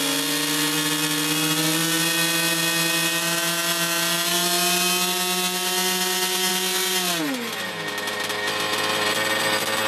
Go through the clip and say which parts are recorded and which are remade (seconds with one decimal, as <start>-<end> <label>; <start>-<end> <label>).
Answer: 0.0-9.9 recorded